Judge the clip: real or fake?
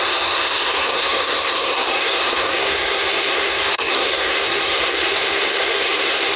fake